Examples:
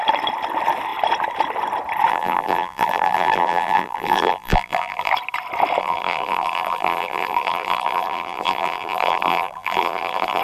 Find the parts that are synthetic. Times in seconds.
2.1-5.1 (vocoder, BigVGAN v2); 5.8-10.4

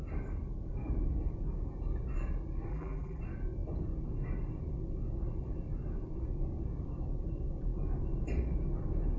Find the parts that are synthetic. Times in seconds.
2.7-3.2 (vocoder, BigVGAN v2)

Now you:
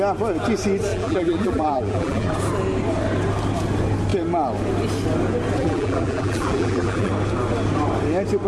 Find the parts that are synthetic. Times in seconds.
0.9-2.3 (vocoder, BigVGAN v2); 5.6-7.1

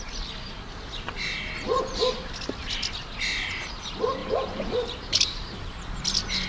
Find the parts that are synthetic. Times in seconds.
4.2-6.0 (vocoder, BigVGAN v2)

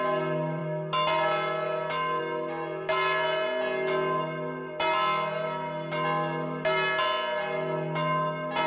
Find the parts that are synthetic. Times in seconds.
none

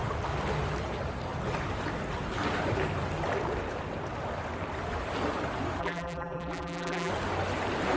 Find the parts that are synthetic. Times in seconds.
5.8-7.1 (vocoder, BigVGAN v2)

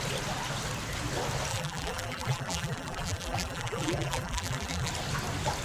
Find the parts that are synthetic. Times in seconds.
1.5-4.9 (vocoder, BigVGAN v2)